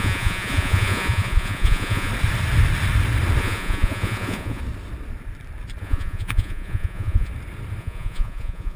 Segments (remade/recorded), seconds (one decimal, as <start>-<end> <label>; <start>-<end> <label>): 0.0-2.1 remade; 2.1-3.4 recorded; 3.4-4.6 remade; 4.6-5.8 recorded; 5.8-7.3 remade; 7.3-7.8 recorded; 7.8-8.8 remade